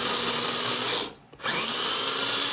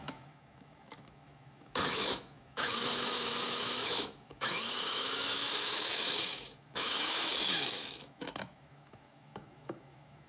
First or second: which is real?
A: first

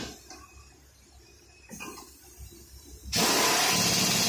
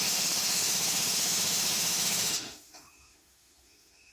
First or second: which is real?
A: first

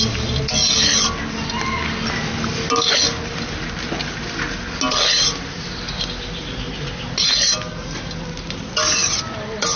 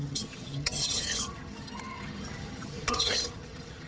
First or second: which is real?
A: first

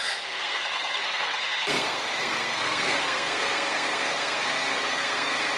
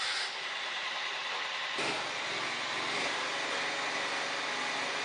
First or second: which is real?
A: second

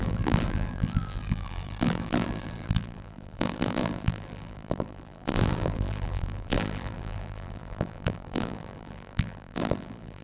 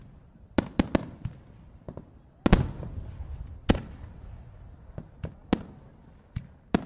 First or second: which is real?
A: second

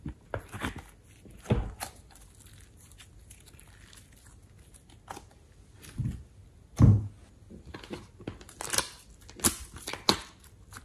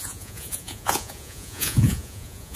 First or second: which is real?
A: first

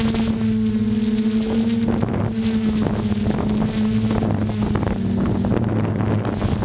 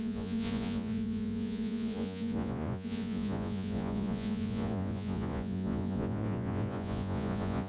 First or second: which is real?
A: first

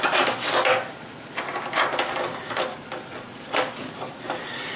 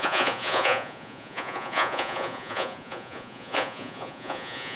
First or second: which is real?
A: first